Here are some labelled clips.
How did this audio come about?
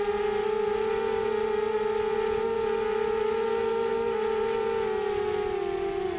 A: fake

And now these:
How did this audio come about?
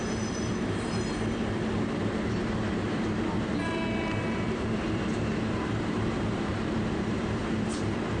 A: fake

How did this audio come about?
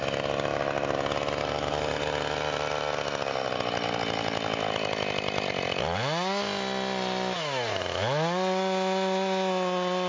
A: real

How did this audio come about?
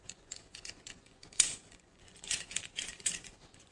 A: fake